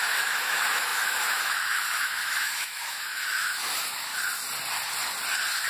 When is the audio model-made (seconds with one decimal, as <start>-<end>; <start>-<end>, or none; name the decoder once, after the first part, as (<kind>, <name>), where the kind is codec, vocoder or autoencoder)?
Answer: 0.0-4.1 (autoencoder, DAC-VAE)